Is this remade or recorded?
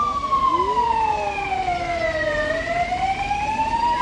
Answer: recorded